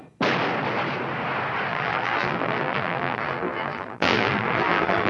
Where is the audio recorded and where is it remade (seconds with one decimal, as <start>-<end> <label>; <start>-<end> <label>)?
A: 0.0-1.7 recorded; 1.7-5.1 remade